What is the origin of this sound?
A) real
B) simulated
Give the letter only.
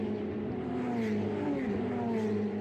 A